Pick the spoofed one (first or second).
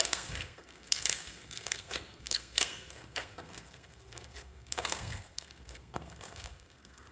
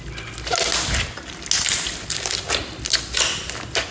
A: first